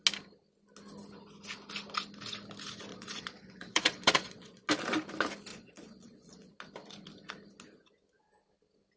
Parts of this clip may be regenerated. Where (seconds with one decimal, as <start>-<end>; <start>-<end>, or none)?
2.9-4.7; 5.5-6.5